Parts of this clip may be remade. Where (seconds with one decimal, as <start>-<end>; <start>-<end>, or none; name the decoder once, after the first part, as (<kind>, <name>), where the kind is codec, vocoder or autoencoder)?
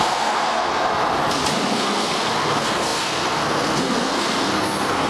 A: 0.0-0.7 (codec, SNAC); 1.7-5.1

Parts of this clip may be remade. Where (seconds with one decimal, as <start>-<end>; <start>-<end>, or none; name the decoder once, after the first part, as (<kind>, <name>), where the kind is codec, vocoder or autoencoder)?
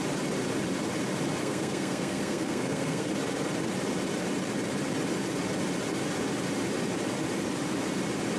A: 1.4-3.1 (codec, SNAC)